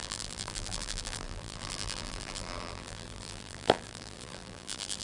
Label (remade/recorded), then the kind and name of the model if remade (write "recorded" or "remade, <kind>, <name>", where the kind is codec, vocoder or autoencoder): remade, vocoder, BigVGAN v2